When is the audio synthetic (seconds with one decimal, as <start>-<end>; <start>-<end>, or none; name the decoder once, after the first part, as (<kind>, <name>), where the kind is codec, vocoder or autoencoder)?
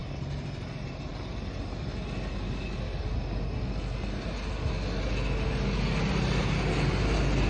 0.0-1.1 (vocoder, BigVGAN v2)